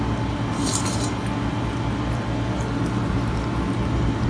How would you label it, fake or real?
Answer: real